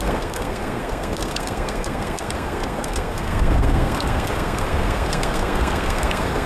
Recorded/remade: remade